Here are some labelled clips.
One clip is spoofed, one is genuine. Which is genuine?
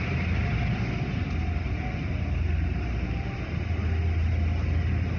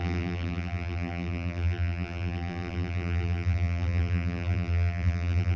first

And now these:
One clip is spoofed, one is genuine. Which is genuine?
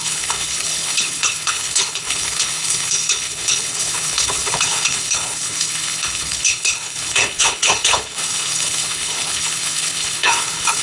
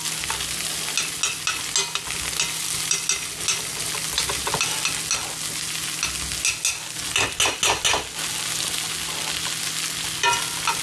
second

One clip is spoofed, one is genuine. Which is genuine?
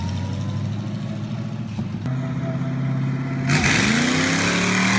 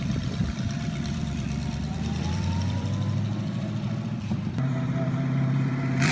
first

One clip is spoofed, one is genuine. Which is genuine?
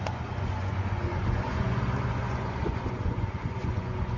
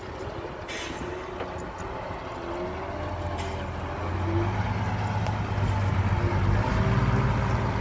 second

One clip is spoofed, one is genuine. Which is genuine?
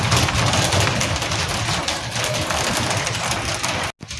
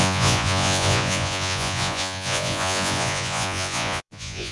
first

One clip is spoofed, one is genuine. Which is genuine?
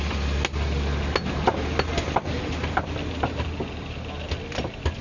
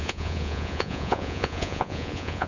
first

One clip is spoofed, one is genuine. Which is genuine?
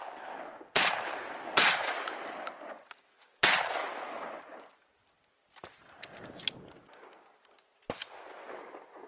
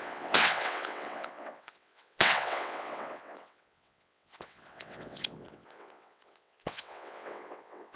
first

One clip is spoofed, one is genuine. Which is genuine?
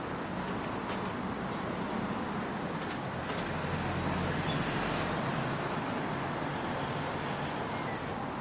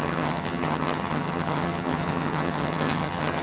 first